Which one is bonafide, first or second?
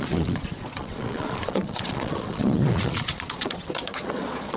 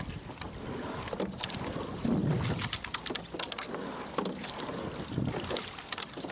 second